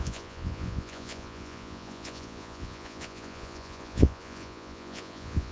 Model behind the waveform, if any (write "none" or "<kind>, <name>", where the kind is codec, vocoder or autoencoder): vocoder, Vocos